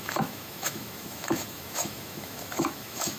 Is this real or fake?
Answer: fake